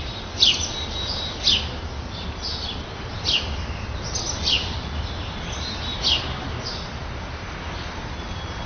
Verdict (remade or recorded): recorded